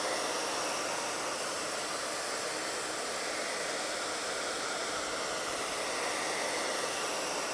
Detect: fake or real real